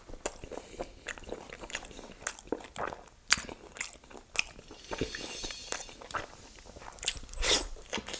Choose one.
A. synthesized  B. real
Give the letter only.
B